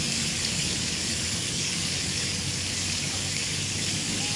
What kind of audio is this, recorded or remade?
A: remade